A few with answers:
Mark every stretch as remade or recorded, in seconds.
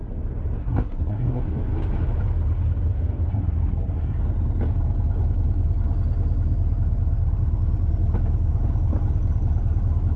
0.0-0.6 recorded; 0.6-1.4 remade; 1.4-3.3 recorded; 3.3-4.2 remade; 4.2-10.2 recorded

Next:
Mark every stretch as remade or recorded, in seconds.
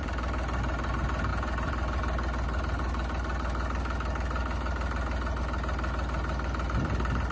0.0-7.3 recorded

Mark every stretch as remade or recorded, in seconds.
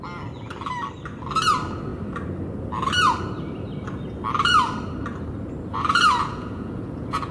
0.0-5.7 recorded; 5.7-7.3 remade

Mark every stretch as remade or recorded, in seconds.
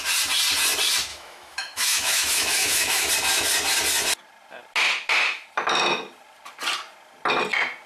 0.0-1.1 recorded; 1.1-3.1 remade; 3.1-7.9 recorded